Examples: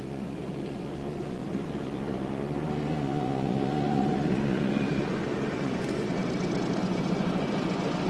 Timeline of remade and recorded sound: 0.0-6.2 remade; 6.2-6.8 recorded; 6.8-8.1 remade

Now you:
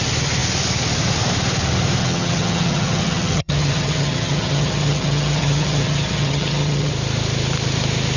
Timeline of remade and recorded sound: 0.0-2.0 recorded; 2.0-6.9 remade; 6.9-8.2 recorded

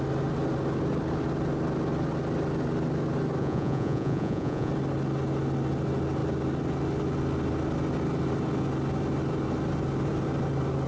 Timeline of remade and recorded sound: 0.0-3.4 recorded; 3.4-4.7 remade; 4.7-10.9 recorded

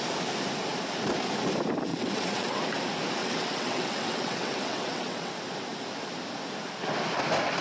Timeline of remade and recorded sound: 0.0-1.9 recorded; 1.9-2.6 remade; 2.6-3.2 recorded; 3.2-5.3 remade; 5.3-7.6 recorded

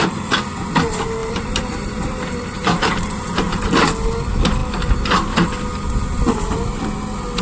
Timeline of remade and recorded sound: 0.0-1.2 recorded; 1.2-3.6 remade; 3.6-7.4 recorded

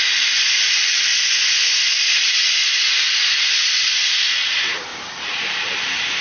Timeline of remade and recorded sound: 0.0-0.5 recorded; 0.5-1.1 remade; 1.1-3.3 recorded; 3.3-6.2 remade

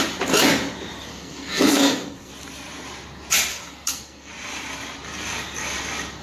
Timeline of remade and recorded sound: 0.0-1.1 recorded; 1.1-2.3 remade; 2.3-3.5 recorded; 3.5-4.3 remade; 4.3-6.2 recorded